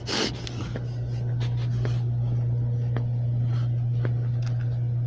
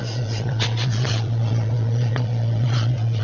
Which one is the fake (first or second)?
second